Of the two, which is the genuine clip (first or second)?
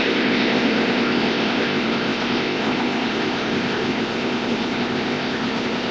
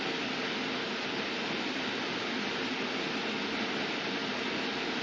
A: second